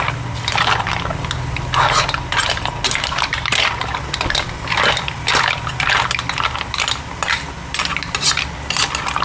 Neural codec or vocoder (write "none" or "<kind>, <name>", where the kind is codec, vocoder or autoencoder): none